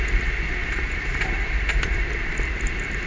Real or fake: real